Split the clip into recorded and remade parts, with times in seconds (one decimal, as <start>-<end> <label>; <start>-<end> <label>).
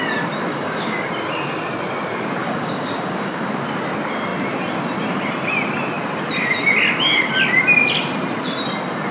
0.0-0.5 recorded; 0.5-1.1 remade; 1.1-2.4 recorded; 2.4-3.5 remade; 3.5-9.1 recorded